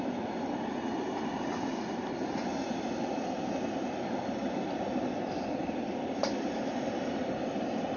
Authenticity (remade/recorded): recorded